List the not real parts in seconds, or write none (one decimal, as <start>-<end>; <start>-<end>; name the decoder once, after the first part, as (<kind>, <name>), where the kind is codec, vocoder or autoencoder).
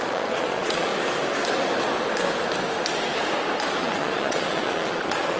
0.0-0.9 (vocoder, Vocos); 3.8-5.4